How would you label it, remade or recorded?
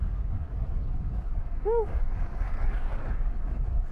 remade